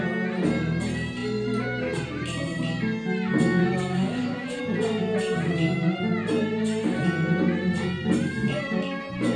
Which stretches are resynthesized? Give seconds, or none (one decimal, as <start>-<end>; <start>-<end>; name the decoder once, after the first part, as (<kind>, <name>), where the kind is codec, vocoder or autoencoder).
3.6-4.6 (codec, DAC)